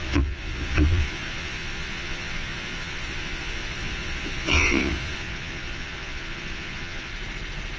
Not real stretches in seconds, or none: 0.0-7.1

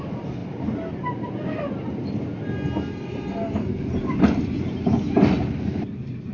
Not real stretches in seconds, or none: none